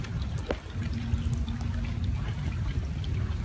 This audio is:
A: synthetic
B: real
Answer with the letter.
B